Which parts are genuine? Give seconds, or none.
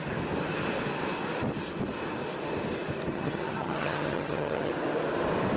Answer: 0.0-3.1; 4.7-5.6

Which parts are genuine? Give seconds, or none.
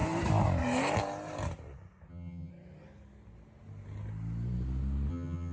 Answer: 0.0-2.1; 2.5-5.1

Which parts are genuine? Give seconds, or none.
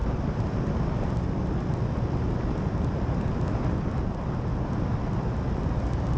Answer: 0.0-6.2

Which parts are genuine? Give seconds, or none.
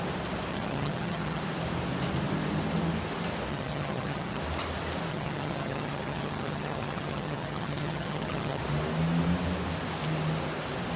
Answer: 0.0-0.5; 1.4-3.5; 4.4-5.1; 8.6-11.0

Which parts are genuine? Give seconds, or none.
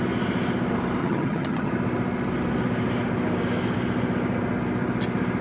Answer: 0.0-1.0; 1.7-5.4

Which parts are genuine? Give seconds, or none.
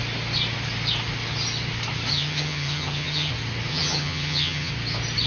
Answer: 0.0-2.1; 3.3-3.7; 4.7-5.3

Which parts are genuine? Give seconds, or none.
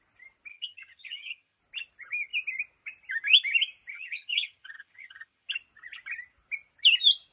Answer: 0.0-0.5; 1.6-3.9; 5.5-7.3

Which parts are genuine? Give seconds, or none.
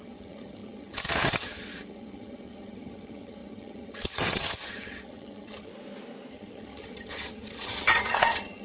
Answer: 5.7-6.3